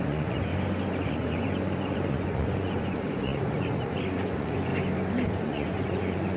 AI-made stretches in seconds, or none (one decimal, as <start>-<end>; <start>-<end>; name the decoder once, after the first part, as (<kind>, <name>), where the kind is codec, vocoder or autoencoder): 0.0-0.5 (vocoder, Vocos); 1.0-4.7; 5.3-6.4